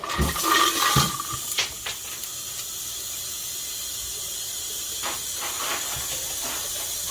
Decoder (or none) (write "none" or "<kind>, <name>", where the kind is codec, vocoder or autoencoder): none